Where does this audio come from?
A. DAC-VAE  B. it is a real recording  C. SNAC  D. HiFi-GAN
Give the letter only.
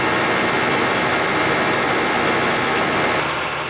B